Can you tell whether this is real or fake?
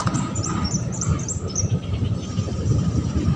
fake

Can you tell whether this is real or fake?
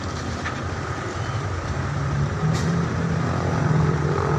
fake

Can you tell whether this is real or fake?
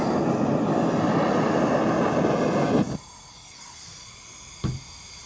real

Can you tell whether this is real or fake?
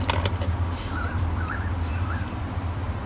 fake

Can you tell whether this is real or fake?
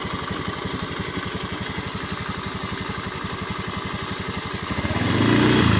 real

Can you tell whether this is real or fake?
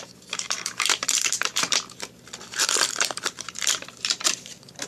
fake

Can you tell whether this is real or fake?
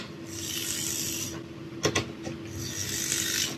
real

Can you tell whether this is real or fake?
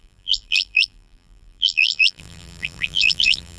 fake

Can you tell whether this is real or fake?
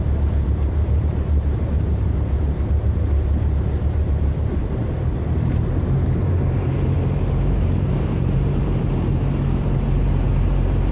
fake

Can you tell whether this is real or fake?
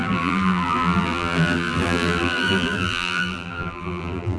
fake